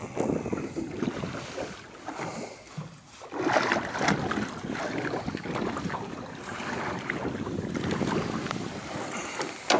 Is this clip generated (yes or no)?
no